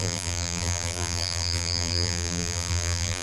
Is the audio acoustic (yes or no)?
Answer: no